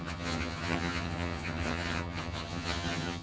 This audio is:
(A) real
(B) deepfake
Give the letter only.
B